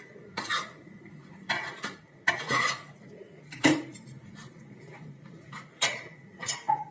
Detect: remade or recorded remade